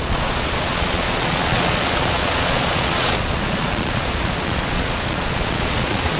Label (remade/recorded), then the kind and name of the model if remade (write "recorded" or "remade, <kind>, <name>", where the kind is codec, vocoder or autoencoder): remade, vocoder, Vocos